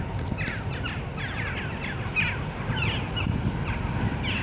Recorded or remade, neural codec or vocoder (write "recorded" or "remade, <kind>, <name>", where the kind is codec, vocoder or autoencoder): recorded